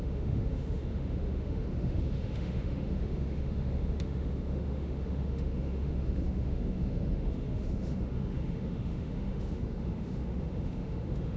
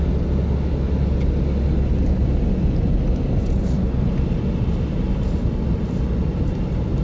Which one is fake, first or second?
first